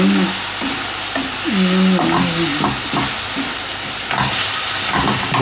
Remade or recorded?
recorded